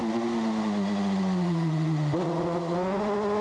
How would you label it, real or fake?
real